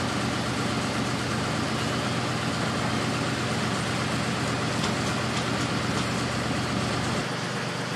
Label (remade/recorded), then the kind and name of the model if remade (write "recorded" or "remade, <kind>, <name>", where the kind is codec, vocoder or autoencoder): recorded